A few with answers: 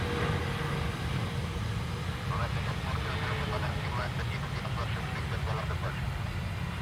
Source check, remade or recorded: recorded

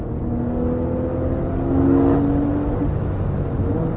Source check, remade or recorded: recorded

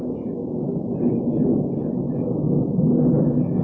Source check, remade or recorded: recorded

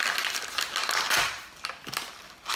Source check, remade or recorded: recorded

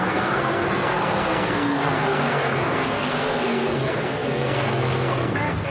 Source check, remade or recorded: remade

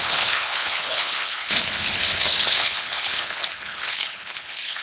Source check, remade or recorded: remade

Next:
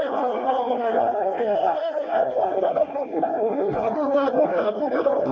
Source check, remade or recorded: remade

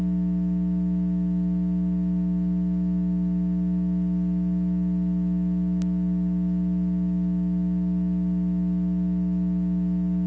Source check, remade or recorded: recorded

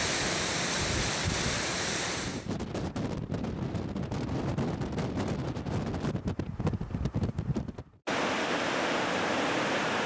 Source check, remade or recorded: recorded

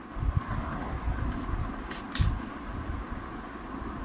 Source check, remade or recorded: recorded